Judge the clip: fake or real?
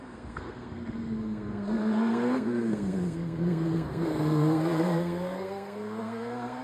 fake